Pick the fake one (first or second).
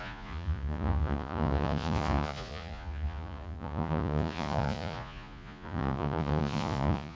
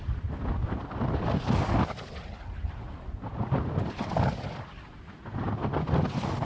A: first